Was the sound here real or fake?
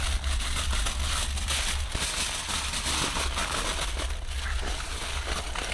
real